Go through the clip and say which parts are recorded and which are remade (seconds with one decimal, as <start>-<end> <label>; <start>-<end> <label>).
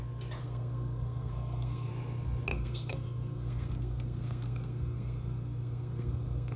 0.0-0.4 recorded; 0.4-1.9 remade; 1.9-2.5 recorded; 2.5-6.6 remade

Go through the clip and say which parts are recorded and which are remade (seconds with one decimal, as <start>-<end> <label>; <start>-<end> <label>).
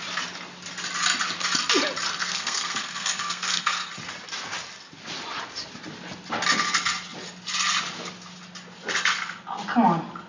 0.0-2.2 recorded; 2.2-3.9 remade; 3.9-10.3 recorded